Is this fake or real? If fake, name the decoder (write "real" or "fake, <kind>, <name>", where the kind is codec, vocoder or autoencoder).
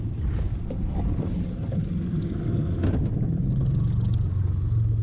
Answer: real